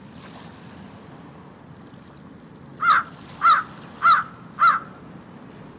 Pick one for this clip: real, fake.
real